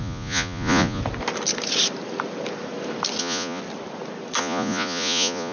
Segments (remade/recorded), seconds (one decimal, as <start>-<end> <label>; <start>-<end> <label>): 0.0-1.0 remade; 1.0-3.2 recorded; 3.2-3.6 remade; 3.6-4.4 recorded; 4.4-5.5 remade